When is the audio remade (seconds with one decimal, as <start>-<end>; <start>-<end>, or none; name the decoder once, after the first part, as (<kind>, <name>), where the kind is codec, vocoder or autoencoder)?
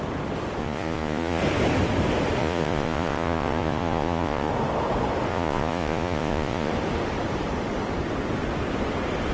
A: 0.6-1.4 (vocoder, Vocos); 2.4-4.5; 5.3-6.7